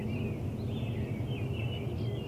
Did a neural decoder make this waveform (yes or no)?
no